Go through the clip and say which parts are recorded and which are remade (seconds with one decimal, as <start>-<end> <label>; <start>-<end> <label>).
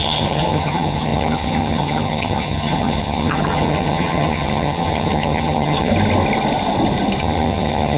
0.0-5.9 remade; 5.9-7.2 recorded; 7.2-8.0 remade